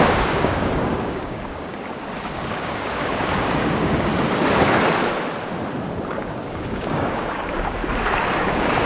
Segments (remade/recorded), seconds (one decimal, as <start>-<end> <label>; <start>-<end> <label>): 0.0-4.1 remade; 4.1-6.1 recorded; 6.1-7.8 remade; 7.8-8.5 recorded; 8.5-8.9 remade